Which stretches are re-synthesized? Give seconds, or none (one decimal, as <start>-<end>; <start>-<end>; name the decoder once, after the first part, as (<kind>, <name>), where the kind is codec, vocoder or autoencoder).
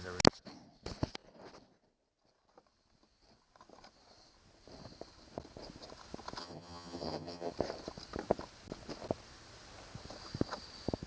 6.4-7.5 (vocoder, HiFi-GAN)